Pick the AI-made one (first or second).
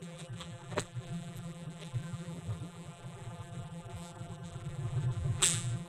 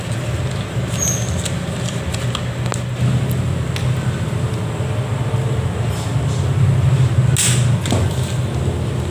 first